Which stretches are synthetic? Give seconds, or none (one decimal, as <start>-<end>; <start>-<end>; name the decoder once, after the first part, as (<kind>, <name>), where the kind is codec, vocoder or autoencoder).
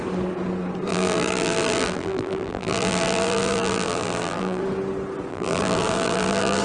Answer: 0.9-4.6 (vocoder, BigVGAN v2); 5.3-6.6